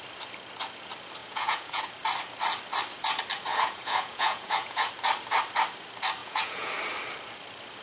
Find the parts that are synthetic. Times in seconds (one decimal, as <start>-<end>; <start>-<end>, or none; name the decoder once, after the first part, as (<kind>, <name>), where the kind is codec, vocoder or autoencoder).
1.2-1.8 (vocoder, Vocos); 3.5-4.9; 6.2-6.7